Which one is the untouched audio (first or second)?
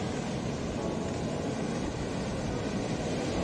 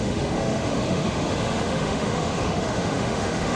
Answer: first